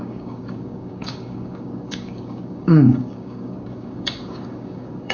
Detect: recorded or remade remade